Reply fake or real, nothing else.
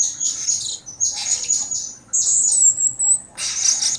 real